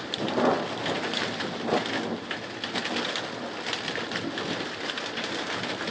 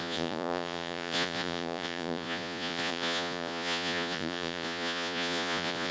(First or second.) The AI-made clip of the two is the second